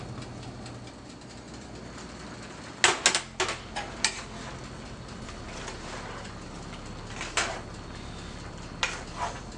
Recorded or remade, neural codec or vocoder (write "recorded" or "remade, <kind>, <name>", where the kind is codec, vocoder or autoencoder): recorded